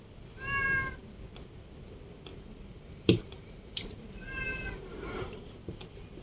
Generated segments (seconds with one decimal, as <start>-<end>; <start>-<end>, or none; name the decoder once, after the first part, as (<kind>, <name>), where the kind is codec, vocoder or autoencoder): 2.3-5.5 (vocoder, BigVGAN v2)